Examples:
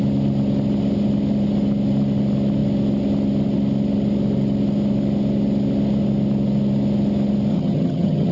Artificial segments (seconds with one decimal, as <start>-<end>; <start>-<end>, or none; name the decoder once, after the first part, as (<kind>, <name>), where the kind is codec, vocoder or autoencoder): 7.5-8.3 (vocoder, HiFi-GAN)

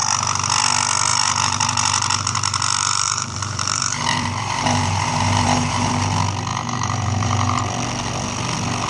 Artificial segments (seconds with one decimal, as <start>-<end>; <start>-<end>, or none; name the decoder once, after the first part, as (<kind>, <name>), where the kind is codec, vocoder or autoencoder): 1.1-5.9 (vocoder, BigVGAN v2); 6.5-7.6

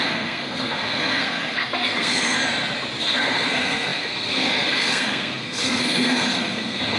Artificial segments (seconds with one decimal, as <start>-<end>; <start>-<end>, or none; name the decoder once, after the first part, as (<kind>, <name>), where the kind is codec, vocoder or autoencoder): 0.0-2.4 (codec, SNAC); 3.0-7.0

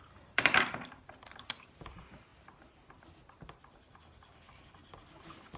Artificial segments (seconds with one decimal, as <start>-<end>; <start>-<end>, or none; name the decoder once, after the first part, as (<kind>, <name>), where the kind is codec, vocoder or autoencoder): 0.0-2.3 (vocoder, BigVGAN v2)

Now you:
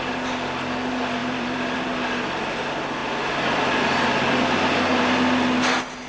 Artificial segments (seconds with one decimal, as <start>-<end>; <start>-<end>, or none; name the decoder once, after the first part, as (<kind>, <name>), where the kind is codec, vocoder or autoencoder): 1.2-2.0 (vocoder, BigVGAN v2)